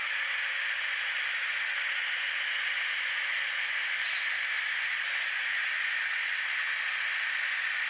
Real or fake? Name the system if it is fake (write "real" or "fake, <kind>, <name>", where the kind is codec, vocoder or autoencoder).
real